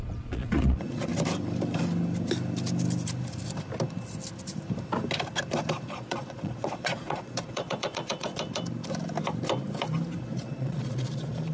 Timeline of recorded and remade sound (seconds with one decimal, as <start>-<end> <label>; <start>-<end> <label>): 0.0-1.1 remade; 1.1-5.8 recorded; 5.8-8.3 remade; 8.3-10.2 recorded; 10.2-11.5 remade

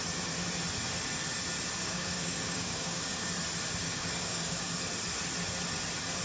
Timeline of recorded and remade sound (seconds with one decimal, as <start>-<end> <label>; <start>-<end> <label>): 0.0-1.8 recorded; 1.8-3.3 remade; 3.3-3.8 recorded; 3.8-4.8 remade; 4.8-6.2 recorded

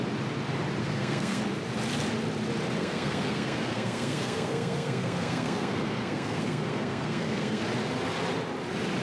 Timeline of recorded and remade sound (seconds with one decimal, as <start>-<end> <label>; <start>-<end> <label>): 0.0-0.8 recorded; 0.8-1.4 remade; 1.4-2.8 recorded; 2.8-7.6 remade; 7.6-9.0 recorded

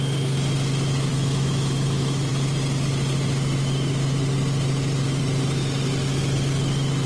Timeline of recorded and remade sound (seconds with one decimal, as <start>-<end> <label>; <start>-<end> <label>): 0.0-1.1 recorded; 1.1-2.3 remade; 2.3-7.1 recorded

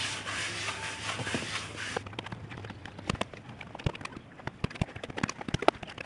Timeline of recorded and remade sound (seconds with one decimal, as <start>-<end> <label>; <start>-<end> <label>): 0.0-2.8 recorded; 2.8-3.6 remade; 3.6-4.1 recorded; 4.1-5.1 remade; 5.1-6.1 recorded

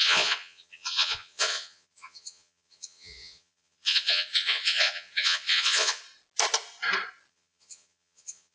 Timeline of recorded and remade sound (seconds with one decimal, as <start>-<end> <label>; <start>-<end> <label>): 0.0-6.0 remade; 6.0-7.3 recorded; 7.3-8.5 remade

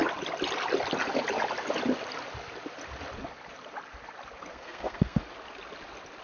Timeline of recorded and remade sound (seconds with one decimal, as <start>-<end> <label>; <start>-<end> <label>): 0.0-4.5 recorded; 4.5-5.2 remade; 5.2-6.2 recorded